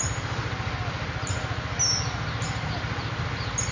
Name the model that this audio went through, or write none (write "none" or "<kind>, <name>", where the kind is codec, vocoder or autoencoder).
none